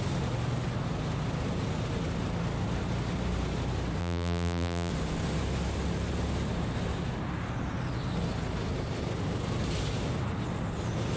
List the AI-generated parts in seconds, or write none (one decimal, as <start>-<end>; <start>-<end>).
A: 4.0-4.9